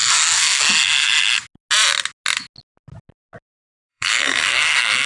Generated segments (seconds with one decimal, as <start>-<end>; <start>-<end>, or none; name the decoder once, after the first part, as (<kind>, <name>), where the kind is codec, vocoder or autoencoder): 0.0-0.6 (codec, SNAC); 3.9-5.1

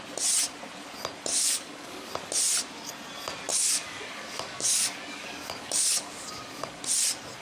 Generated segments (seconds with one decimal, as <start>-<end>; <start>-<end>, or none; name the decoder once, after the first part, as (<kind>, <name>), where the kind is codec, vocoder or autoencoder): 1.3-2.1 (codec, DAC); 3.5-6.8

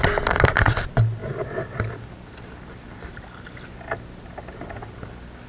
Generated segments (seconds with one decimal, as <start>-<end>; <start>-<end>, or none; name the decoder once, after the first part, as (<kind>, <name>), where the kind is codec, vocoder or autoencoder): none

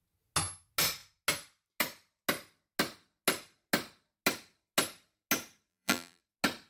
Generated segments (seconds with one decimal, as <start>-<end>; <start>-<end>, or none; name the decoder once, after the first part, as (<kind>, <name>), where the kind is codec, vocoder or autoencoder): 5.7-6.2 (vocoder, BigVGAN v2)